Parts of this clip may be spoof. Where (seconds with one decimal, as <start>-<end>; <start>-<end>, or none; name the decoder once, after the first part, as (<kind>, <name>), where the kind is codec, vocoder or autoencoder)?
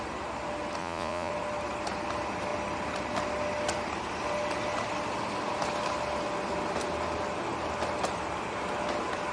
0.8-1.3 (vocoder, Vocos)